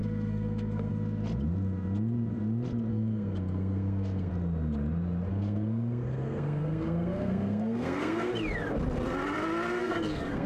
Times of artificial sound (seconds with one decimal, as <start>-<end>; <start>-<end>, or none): 0.0-0.9; 2.9-4.3; 5.3-8.3; 9.8-10.5

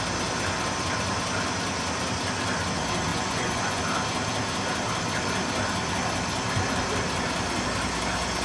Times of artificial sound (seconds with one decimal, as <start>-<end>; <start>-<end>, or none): 3.1-3.8